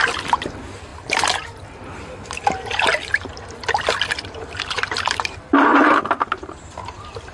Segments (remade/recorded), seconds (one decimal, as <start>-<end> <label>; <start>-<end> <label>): 0.0-7.3 recorded

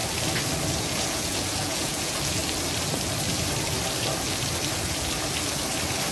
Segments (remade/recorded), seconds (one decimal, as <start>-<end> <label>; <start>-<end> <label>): 0.0-0.8 recorded; 0.8-2.4 remade; 2.4-6.1 recorded